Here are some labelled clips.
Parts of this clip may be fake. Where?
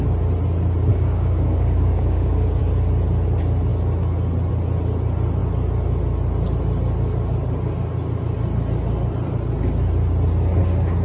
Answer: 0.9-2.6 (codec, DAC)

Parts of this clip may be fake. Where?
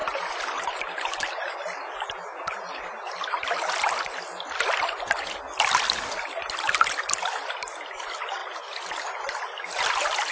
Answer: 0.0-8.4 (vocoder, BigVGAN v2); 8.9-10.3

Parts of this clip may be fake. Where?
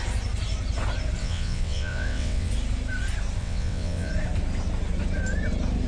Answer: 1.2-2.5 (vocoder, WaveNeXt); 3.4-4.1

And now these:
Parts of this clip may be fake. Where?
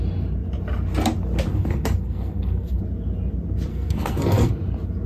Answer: 1.5-2.8 (codec, SNAC); 3.7-4.5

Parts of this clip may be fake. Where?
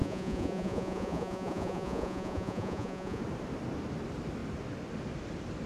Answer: 0.0-3.2 (vocoder, Vocos)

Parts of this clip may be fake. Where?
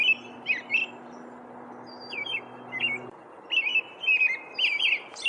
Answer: none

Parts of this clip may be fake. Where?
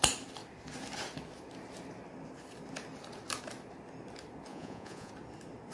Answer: 4.5-5.1 (vocoder, Vocos)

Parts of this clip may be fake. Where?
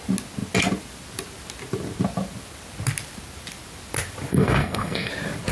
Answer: 4.3-5.1 (codec, SNAC)